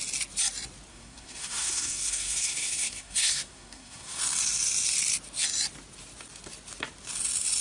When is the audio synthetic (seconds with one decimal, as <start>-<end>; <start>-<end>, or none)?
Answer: 0.9-4.2